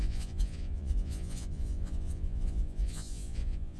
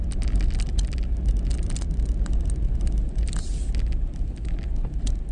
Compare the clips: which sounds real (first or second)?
second